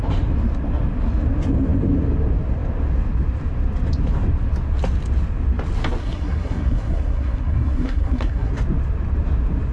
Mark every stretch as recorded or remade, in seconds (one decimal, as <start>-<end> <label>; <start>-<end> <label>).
0.0-6.0 recorded; 6.0-8.5 remade; 8.5-9.7 recorded